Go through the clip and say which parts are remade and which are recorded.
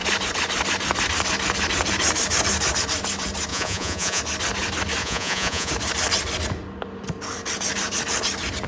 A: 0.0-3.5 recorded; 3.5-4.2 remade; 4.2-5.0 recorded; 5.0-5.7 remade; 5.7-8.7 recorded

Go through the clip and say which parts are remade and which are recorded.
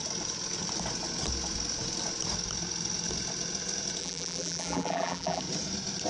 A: 0.0-4.0 recorded; 4.0-5.4 remade; 5.4-6.1 recorded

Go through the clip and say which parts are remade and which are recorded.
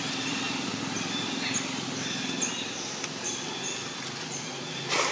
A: 0.0-5.1 recorded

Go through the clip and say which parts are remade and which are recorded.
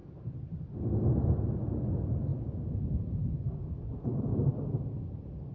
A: 0.0-5.5 recorded